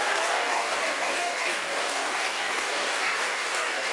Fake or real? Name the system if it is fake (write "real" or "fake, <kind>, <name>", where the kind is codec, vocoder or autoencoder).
fake, codec, DAC